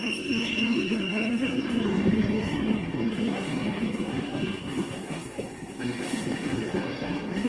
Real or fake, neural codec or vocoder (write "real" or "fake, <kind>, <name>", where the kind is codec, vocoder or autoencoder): fake, codec, SNAC